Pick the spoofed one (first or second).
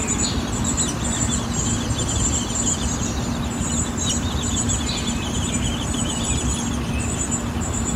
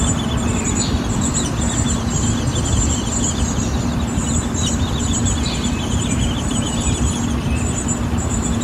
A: second